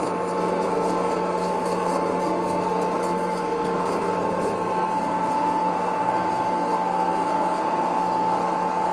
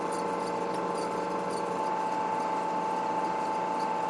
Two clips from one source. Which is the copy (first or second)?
first